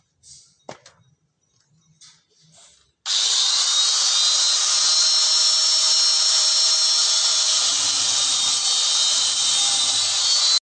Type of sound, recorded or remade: recorded